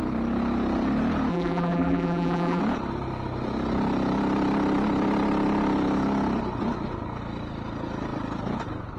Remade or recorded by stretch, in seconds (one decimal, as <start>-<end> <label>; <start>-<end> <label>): 0.0-1.3 recorded; 1.3-2.6 remade; 2.6-9.0 recorded